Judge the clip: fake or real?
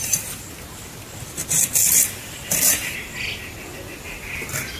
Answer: real